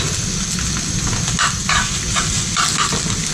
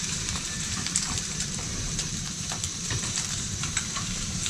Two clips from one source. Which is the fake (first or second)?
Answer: second